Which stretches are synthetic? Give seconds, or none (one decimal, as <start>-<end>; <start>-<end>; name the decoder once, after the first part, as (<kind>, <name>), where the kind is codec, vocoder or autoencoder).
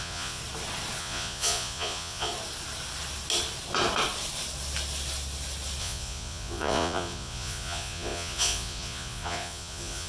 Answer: 0.0-0.4 (vocoder, Vocos); 1.0-2.3; 5.8-10.1